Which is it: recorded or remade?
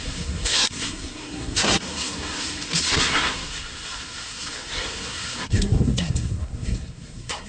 remade